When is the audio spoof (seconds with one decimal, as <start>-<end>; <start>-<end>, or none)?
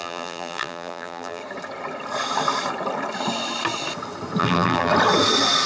0.0-1.4; 4.4-4.9